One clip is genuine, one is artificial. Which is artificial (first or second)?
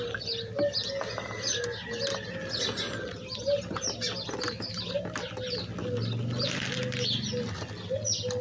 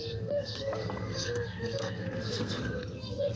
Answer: second